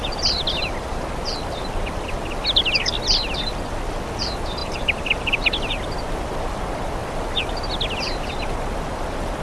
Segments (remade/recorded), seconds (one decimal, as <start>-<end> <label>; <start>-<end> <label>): 0.0-1.0 remade; 1.0-4.6 recorded; 4.6-5.7 remade; 5.7-9.4 recorded